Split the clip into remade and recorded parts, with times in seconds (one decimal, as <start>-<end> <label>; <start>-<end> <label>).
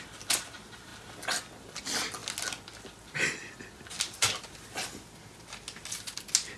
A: 0.0-6.6 recorded